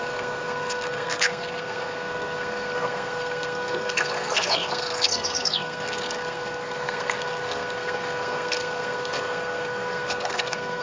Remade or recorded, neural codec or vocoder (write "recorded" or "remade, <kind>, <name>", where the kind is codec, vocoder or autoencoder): remade, codec, SNAC